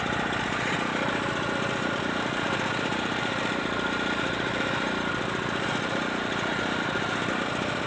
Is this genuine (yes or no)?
no